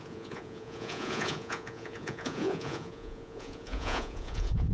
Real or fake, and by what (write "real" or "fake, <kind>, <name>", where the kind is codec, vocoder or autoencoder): fake, vocoder, Vocos